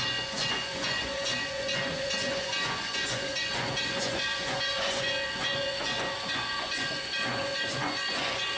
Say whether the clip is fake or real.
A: fake